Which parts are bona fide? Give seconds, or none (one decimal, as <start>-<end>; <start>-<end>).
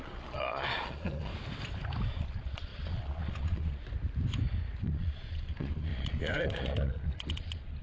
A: 1.3-2.1; 3.8-4.8